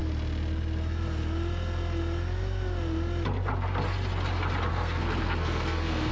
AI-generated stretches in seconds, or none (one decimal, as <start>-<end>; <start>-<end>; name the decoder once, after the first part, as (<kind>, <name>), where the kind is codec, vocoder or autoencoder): 4.7-6.1 (codec, SNAC)